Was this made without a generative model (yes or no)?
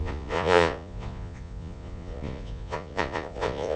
no